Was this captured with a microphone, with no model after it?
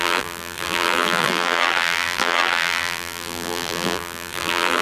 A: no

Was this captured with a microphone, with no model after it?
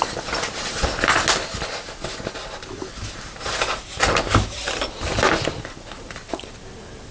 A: yes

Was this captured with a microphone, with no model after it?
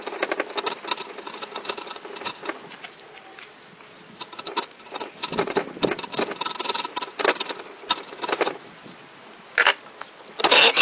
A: yes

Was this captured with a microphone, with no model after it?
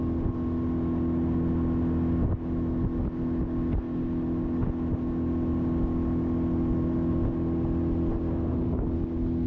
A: yes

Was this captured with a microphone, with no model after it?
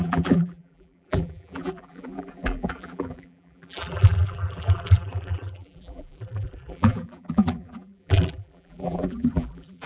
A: no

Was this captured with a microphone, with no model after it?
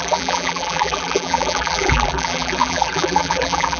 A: no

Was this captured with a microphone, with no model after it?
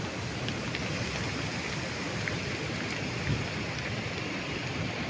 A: yes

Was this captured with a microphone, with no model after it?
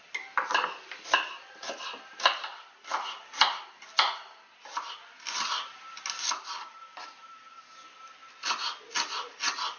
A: yes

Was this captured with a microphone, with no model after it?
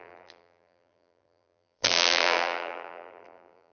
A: no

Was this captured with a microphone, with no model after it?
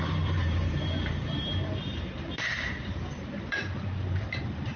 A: no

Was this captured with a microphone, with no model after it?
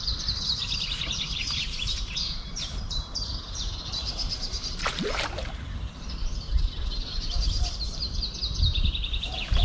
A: no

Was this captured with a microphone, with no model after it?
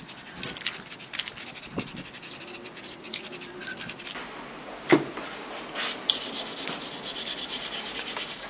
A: yes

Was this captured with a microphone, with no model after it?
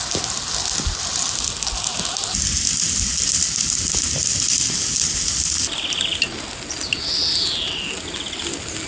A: yes